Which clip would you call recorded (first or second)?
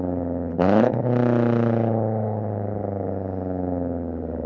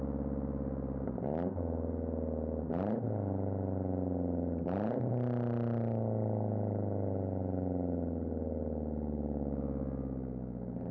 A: second